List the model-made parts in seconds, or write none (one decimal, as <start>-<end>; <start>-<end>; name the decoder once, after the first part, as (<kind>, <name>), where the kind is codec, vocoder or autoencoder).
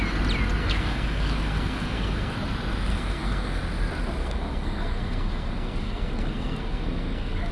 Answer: 0.6-2.3 (codec, SNAC); 2.9-3.6; 4.2-7.5